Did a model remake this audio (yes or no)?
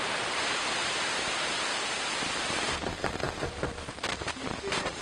yes